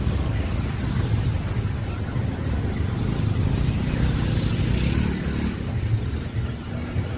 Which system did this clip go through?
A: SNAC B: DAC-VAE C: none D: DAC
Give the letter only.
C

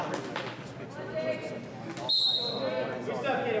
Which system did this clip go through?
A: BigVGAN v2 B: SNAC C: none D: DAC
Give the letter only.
C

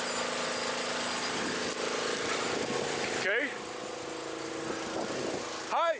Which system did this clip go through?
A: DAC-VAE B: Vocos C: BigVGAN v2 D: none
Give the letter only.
D